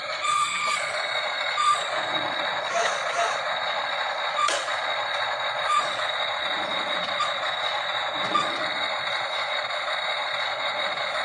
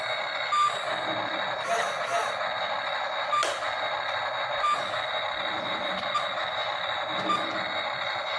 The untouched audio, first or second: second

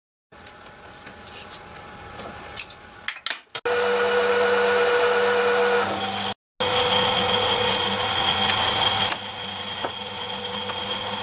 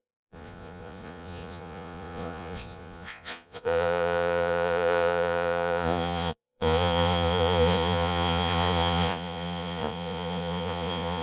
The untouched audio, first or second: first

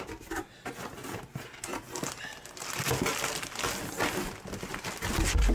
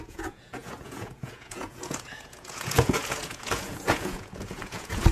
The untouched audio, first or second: first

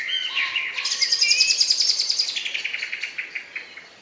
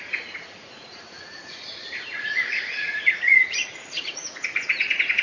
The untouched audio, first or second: first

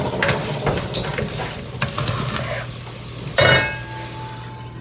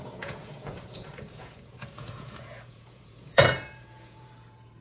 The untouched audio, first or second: first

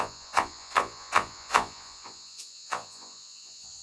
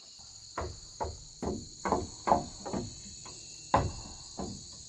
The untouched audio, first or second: second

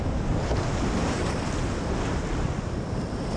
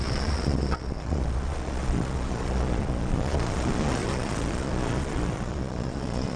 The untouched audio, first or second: first